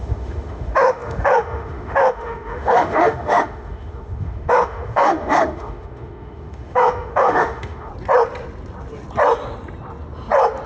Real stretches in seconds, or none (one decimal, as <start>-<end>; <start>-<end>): 7.9-10.7